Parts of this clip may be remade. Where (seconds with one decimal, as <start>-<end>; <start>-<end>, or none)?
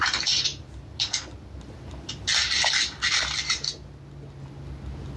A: none